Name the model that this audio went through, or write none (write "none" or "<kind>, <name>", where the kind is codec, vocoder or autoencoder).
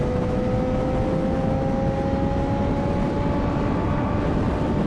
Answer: none